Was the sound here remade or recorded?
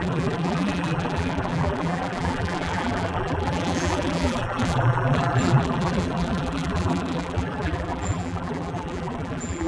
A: remade